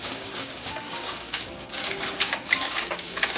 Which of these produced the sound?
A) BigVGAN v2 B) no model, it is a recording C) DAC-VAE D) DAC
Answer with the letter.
D